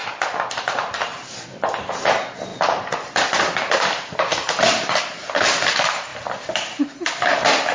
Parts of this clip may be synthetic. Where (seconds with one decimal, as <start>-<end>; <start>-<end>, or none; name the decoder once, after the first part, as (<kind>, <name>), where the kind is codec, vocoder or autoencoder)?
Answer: 0.0-0.6 (vocoder, BigVGAN v2); 1.1-1.9; 2.5-5.0